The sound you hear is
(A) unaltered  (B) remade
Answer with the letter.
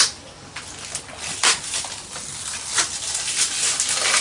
A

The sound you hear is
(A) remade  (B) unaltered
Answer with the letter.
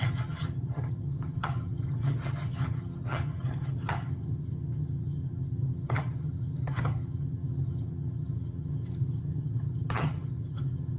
A